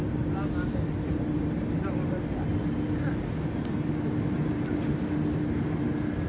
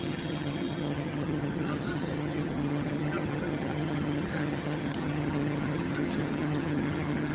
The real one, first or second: first